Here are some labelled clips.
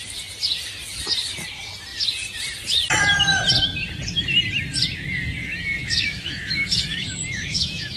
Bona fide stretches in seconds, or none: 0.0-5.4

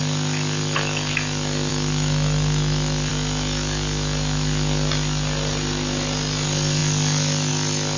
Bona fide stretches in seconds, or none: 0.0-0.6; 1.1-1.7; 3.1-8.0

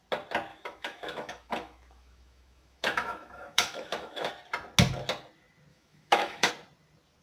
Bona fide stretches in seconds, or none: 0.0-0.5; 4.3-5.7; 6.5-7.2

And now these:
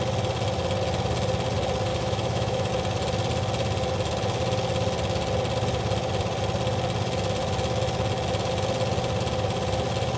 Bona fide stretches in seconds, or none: 0.0-1.9; 2.7-10.2

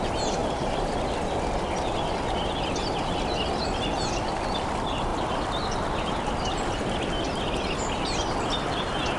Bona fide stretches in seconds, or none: 0.0-9.2